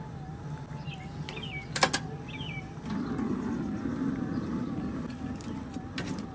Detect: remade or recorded recorded